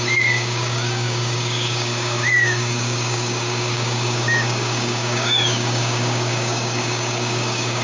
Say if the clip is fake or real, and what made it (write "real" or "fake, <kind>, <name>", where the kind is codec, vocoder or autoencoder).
fake, codec, DAC